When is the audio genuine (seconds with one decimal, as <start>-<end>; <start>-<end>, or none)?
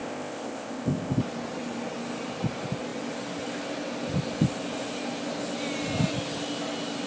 1.2-7.1